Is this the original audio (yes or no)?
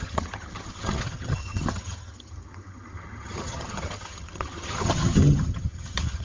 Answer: no